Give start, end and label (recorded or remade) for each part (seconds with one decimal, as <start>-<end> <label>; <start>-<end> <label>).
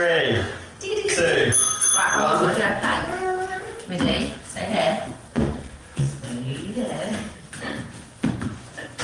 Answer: 0.0-0.5 remade; 0.5-1.6 recorded; 1.6-9.0 remade